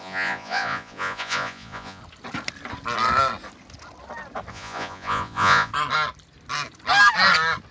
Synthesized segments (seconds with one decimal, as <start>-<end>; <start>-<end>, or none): 0.0-2.0; 4.5-5.7